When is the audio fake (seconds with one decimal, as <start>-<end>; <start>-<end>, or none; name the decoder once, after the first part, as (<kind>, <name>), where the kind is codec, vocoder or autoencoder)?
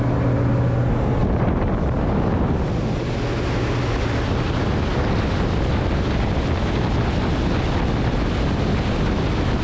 none